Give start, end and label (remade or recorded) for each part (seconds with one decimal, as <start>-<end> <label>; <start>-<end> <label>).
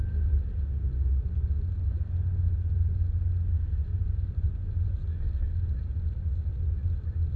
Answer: 0.0-3.8 recorded; 3.8-5.2 remade; 5.2-7.4 recorded